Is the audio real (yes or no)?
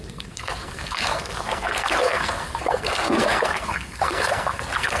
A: no